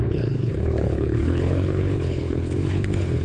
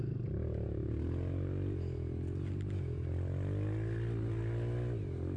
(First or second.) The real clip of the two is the second